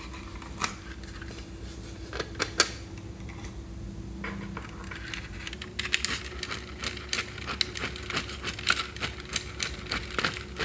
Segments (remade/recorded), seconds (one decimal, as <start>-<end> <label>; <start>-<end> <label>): 0.0-10.6 recorded